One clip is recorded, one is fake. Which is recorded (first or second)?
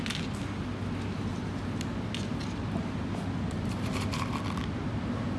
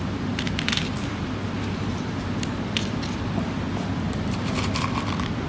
first